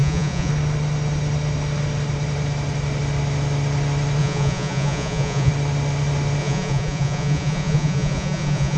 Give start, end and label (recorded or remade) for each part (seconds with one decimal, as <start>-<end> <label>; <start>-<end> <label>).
0.0-0.5 remade; 0.5-4.2 recorded; 4.2-5.5 remade; 5.5-6.4 recorded; 6.4-8.8 remade

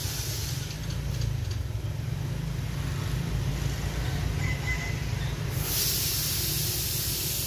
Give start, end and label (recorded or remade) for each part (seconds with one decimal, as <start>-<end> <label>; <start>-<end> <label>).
0.0-7.5 recorded

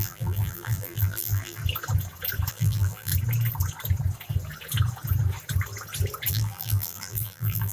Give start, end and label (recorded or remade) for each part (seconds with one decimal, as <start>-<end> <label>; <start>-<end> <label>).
0.0-1.6 remade; 1.6-2.5 recorded; 2.5-3.1 remade; 3.1-6.3 recorded; 6.3-7.7 remade

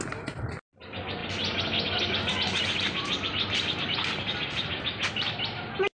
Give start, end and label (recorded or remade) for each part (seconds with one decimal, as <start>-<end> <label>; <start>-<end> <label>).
0.0-6.0 recorded

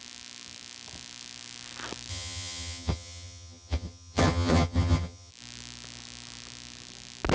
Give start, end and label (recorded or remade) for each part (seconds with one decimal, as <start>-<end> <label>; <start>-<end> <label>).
0.0-2.1 recorded; 2.1-5.3 remade; 5.3-7.3 recorded

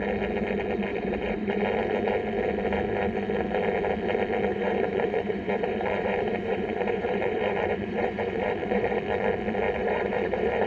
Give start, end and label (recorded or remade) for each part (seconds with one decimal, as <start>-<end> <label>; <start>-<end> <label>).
0.0-0.9 recorded; 0.9-1.6 remade; 1.6-4.5 recorded; 4.5-9.0 remade; 9.0-9.8 recorded; 9.8-10.7 remade

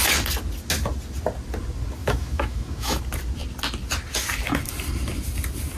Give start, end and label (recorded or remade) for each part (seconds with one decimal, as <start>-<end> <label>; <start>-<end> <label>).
0.0-2.0 recorded; 2.0-3.0 remade; 3.0-5.8 recorded

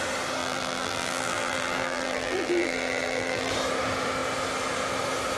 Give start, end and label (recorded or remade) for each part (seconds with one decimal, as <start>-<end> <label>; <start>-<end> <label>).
0.0-0.4 recorded; 0.4-3.5 remade; 3.5-5.4 recorded